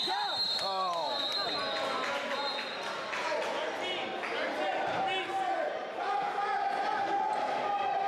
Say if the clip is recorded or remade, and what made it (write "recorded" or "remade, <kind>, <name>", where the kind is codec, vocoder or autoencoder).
recorded